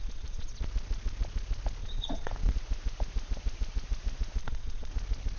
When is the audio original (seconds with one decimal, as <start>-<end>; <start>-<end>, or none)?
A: 0.6-1.8; 2.3-4.4; 4.9-5.4